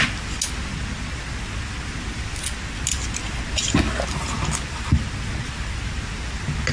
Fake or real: real